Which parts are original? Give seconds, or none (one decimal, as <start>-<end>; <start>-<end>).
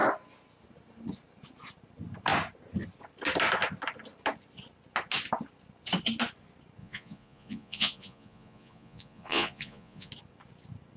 0.0-6.8; 10.1-11.0